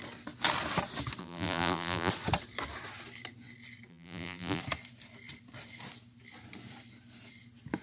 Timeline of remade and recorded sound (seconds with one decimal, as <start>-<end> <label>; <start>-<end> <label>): 0.0-1.2 recorded; 1.2-2.1 remade; 2.1-3.9 recorded; 3.9-4.6 remade; 4.6-7.8 recorded